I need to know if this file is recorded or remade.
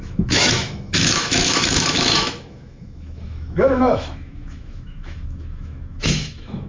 remade